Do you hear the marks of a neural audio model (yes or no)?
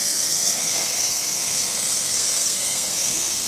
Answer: yes